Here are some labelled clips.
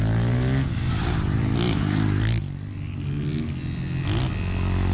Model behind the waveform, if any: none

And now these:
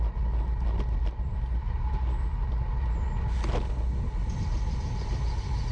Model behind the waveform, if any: none